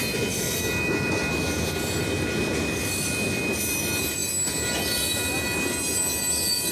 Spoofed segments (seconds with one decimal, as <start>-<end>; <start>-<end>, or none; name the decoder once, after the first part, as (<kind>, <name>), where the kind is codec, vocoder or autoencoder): none